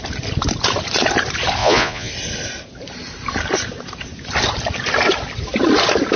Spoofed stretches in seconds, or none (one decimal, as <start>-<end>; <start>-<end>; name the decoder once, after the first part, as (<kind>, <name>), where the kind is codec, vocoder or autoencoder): 1.6-2.1 (vocoder, Vocos)